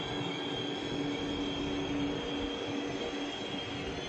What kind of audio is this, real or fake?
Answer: real